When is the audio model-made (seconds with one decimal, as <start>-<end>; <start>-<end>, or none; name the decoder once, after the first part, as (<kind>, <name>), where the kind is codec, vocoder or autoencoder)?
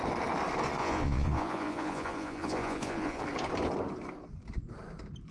0.8-3.2 (vocoder, Vocos)